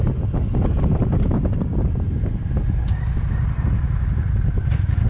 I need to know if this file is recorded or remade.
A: recorded